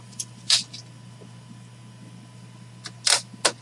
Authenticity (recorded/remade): recorded